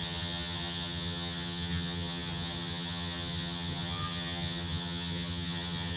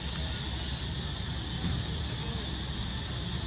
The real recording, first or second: second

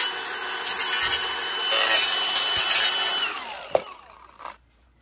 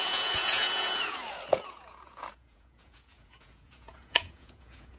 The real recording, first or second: first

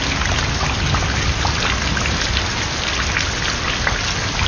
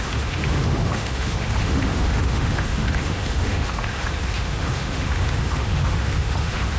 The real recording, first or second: first